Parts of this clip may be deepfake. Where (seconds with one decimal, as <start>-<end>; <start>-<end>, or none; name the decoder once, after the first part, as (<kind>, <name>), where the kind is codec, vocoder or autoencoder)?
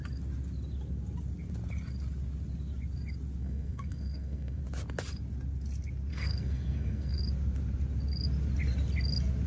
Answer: 3.4-4.6 (codec, SNAC); 6.1-7.2